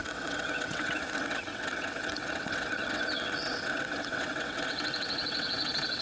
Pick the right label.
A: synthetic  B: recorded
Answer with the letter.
A